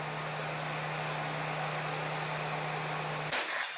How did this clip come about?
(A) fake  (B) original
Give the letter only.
B